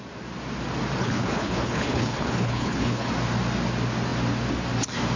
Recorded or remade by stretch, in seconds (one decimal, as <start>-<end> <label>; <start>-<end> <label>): 0.0-1.0 recorded; 1.0-3.1 remade; 3.1-5.2 recorded